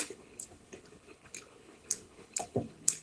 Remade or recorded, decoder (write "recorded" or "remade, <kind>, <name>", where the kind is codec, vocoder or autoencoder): remade, codec, HILCodec